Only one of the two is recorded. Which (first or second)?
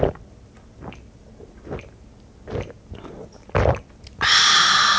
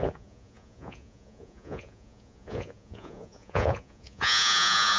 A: first